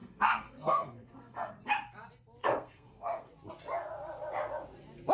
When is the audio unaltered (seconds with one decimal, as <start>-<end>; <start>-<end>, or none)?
1.5-2.4; 3.3-5.1